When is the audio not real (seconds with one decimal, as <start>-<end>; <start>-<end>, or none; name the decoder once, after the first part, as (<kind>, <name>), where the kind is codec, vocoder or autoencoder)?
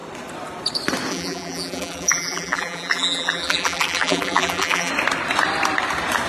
1.1-4.9 (vocoder, BigVGAN v2)